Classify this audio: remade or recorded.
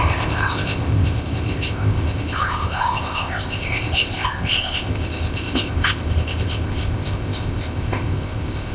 remade